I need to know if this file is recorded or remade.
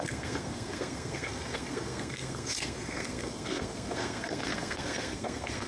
remade